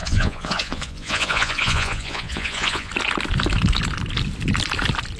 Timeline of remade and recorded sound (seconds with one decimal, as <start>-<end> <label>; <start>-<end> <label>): 0.0-2.9 remade; 2.9-5.2 recorded